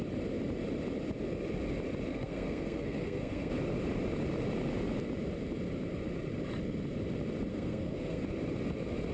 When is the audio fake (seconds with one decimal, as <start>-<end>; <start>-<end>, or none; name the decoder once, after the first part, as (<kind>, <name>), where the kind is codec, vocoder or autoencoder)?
2.1-3.5 (codec, SNAC); 7.5-8.2

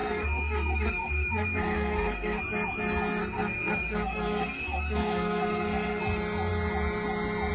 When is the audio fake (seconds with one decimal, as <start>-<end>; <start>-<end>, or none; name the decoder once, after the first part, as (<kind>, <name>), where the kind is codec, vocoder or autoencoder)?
0.0-2.4 (codec, SNAC); 3.2-6.0